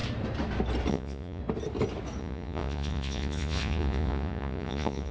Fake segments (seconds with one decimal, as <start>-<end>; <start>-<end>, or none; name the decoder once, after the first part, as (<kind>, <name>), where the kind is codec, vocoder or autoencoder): 0.9-1.4 (vocoder, Vocos); 2.2-5.1

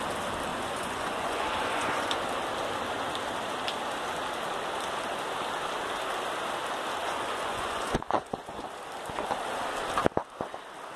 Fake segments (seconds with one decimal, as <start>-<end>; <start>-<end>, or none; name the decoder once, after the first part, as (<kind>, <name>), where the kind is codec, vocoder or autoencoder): 0.5-2.2 (vocoder, Vocos); 7.0-8.6

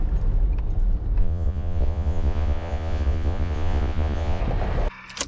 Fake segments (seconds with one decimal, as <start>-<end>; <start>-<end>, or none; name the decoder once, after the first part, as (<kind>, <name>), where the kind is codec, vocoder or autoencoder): 1.2-4.4 (vocoder, Vocos)

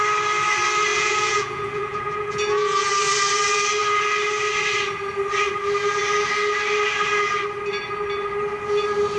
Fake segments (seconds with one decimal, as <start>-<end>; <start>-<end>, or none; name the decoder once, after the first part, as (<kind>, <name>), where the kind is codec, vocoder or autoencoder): 0.9-2.9 (vocoder, Vocos)

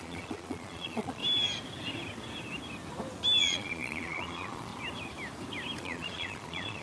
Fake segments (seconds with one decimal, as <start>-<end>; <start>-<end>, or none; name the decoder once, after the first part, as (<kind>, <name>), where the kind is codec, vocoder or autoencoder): 0.0-1.2 (vocoder, Vocos); 3.4-4.7; 5.8-6.8

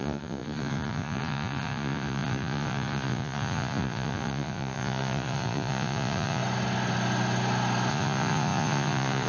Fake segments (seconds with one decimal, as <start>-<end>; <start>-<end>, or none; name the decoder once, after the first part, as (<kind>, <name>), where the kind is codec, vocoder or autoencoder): 0.0-6.4 (vocoder, Vocos); 7.9-9.3

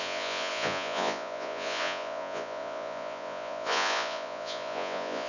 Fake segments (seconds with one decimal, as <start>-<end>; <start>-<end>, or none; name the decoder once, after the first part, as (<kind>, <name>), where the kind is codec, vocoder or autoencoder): 0.0-5.3 (vocoder, Vocos)

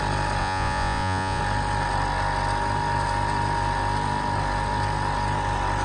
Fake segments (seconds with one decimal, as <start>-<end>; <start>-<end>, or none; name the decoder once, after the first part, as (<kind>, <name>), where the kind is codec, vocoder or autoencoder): 0.4-1.4 (vocoder, Vocos)